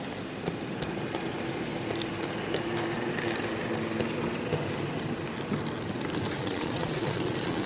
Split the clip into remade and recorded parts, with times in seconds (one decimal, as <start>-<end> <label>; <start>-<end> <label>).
0.0-6.4 recorded; 6.4-7.7 remade